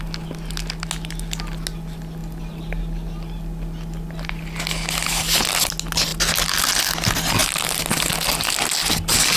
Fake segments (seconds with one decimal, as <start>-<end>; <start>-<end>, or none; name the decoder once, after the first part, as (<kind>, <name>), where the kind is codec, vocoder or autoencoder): none

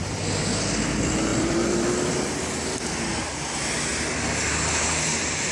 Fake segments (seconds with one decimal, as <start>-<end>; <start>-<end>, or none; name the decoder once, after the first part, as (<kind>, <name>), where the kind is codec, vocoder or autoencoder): 1.3-1.9 (vocoder, BigVGAN v2); 3.9-4.7

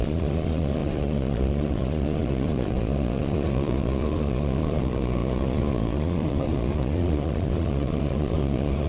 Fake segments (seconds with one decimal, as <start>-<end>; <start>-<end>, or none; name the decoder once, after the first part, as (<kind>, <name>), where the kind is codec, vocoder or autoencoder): 0.0-8.9 (vocoder, Vocos)